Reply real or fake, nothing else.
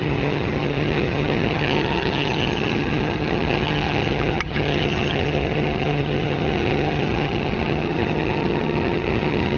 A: fake